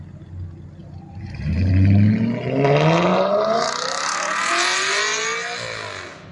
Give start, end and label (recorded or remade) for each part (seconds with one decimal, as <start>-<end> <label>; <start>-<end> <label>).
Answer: 0.0-0.8 recorded; 0.8-1.7 remade; 1.7-3.1 recorded; 3.1-4.5 remade; 4.5-6.3 recorded